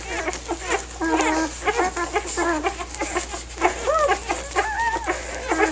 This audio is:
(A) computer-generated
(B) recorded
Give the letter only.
B